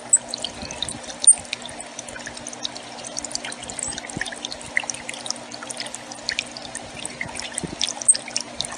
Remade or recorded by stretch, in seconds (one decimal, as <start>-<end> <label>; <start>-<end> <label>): 0.0-8.8 recorded